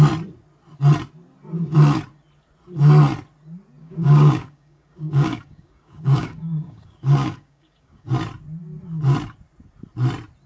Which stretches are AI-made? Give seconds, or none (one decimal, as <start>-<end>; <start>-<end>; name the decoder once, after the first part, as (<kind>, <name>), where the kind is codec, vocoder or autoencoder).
3.8-8.1 (codec, DAC)